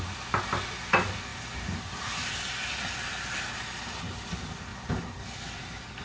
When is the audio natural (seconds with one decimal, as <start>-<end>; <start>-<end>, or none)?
0.0-6.0